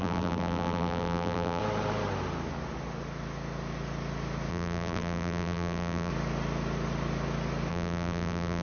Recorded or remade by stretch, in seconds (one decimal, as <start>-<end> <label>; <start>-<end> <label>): 0.0-1.6 remade; 1.6-4.5 recorded; 4.5-6.1 remade; 6.1-7.7 recorded; 7.7-8.6 remade